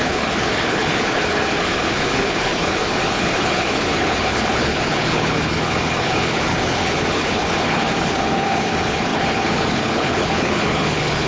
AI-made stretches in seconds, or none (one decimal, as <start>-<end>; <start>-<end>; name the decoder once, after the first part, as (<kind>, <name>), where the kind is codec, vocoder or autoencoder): 0.0-11.3 (codec, HILCodec)